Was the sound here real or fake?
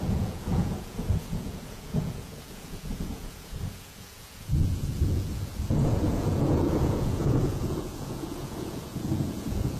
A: fake